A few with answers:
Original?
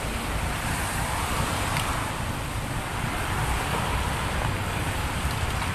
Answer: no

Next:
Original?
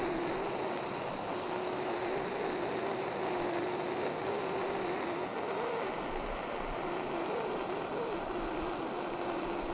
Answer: yes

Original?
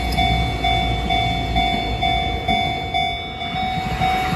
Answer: yes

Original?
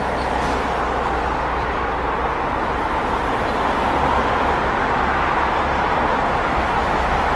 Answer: yes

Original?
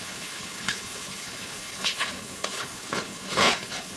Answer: no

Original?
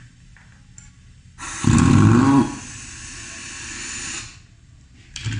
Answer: yes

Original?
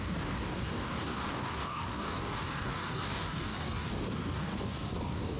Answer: no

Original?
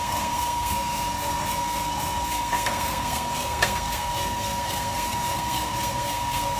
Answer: no